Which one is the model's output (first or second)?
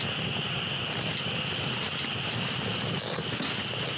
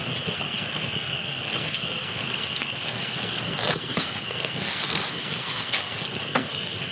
second